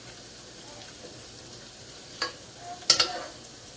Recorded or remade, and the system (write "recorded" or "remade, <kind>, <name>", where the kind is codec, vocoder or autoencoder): recorded